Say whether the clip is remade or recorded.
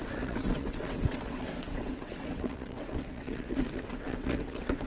remade